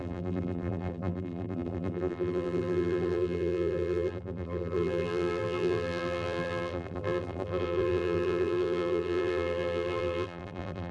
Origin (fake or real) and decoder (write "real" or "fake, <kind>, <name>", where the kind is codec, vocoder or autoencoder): fake, vocoder, BigVGAN v2